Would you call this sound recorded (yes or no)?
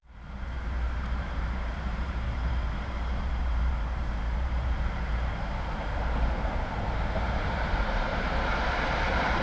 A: no